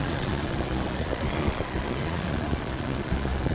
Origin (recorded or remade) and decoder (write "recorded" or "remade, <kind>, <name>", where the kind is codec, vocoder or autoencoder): remade, vocoder, Vocos